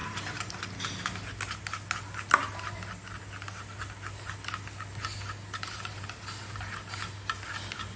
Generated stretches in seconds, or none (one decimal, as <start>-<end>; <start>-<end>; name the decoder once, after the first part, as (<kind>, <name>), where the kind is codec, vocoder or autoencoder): none